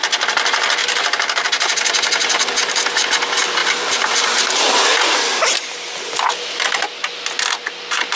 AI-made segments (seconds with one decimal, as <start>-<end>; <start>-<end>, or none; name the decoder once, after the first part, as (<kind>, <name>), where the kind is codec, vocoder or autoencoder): 0.8-2.8 (vocoder, BigVGAN v2); 3.6-4.8

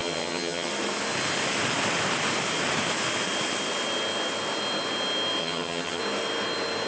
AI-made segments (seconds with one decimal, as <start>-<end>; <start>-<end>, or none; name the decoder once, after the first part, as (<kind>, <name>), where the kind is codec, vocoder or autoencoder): 0.0-0.7 (vocoder, HiFi-GAN); 5.4-6.0

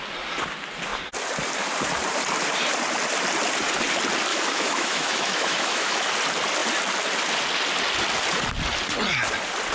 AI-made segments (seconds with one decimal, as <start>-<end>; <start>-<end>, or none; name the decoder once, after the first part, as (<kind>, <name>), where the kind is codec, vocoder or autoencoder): 4.3-6.1 (autoencoder, DAC-VAE)

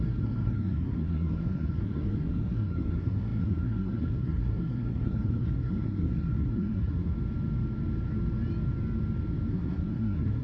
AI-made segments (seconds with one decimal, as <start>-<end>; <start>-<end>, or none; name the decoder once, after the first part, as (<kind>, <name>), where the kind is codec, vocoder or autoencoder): 0.0-7.1 (codec, SNAC); 9.5-10.4

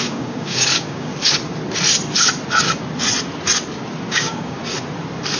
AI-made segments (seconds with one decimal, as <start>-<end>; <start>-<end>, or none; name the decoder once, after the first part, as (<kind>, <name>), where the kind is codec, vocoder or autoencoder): 0.0-1.1 (codec, DAC); 4.1-4.6

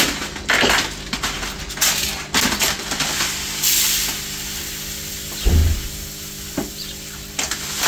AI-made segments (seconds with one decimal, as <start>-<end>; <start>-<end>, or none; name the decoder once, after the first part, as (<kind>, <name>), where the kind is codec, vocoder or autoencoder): none

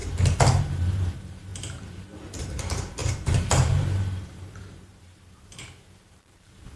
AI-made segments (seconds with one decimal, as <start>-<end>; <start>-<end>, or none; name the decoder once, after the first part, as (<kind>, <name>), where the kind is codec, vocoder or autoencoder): 0.6-6.8 (vocoder, BigVGAN v2)